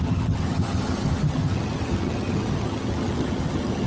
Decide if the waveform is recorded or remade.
remade